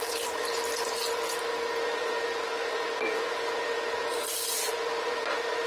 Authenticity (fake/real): real